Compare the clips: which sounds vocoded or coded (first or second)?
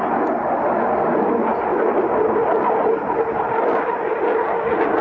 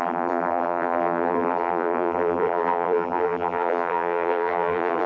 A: second